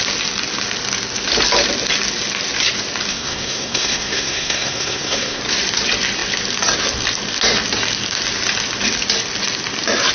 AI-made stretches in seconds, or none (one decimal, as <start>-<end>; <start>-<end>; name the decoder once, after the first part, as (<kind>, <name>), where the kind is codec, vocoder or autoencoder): 3.1-5.4 (codec, SNAC)